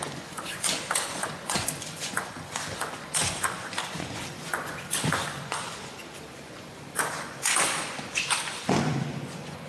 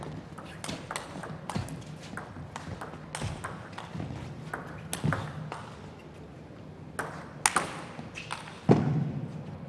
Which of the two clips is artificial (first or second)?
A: first